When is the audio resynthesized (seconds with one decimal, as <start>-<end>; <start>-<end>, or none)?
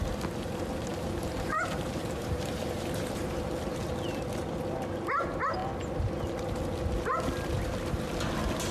0.9-4.0